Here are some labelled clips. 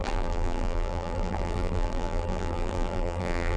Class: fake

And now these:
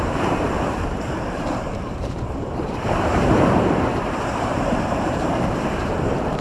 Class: fake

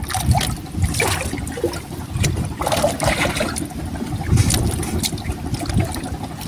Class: real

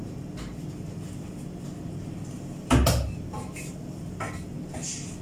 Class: real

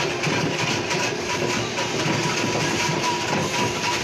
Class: real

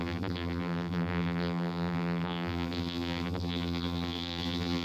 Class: fake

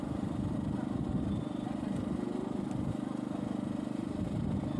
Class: fake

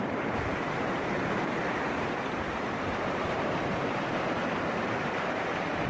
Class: fake